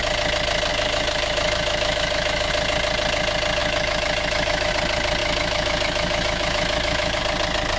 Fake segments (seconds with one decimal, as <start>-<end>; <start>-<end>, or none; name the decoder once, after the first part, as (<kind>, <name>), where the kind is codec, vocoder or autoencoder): 0.7-2.5 (autoencoder, DAC-VAE); 3.6-4.7; 5.2-7.2